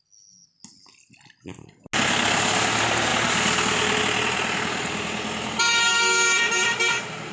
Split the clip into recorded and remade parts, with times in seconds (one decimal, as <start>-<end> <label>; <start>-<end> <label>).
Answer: 0.0-7.3 recorded